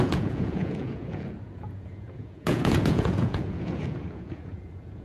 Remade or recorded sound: remade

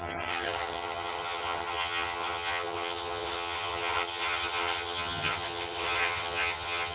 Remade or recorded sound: remade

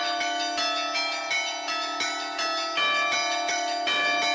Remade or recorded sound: recorded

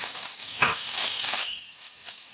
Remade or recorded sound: remade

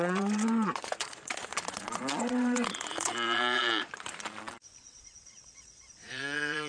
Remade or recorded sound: remade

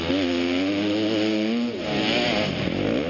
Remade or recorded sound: recorded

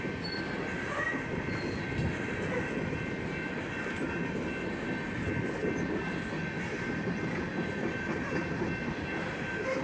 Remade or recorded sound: recorded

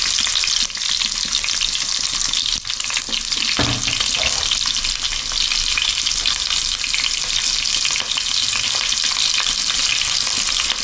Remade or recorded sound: recorded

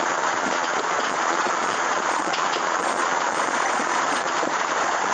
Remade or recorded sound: remade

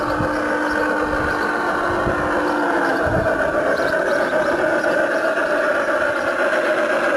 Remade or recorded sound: recorded